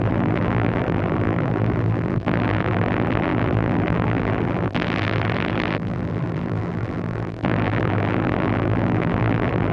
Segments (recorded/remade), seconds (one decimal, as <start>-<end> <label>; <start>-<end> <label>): 0.0-9.7 remade